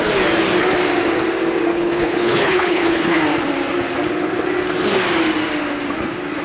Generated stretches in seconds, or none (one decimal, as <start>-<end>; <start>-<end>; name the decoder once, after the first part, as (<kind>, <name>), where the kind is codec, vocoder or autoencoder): 1.7-3.2 (codec, HILCodec)